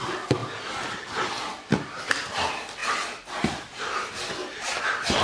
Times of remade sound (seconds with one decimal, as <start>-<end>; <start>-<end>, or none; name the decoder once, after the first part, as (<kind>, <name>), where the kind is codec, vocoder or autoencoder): 2.8-4.8 (vocoder, BigVGAN v2)